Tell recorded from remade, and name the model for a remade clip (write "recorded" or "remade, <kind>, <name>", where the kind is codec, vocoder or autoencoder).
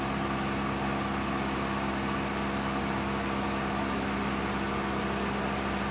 recorded